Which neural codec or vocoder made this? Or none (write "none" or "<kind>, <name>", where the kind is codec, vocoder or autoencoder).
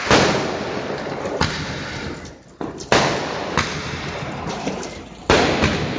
none